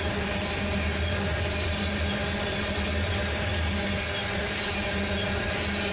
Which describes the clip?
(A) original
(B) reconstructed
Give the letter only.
A